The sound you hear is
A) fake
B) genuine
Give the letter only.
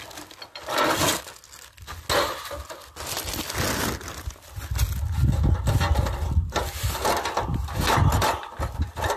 B